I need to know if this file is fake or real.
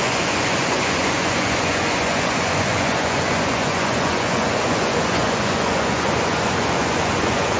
fake